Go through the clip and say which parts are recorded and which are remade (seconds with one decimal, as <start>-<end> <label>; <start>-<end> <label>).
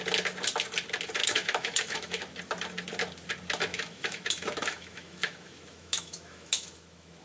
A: 0.0-1.2 recorded; 1.2-2.2 remade; 2.2-3.7 recorded; 3.7-7.2 remade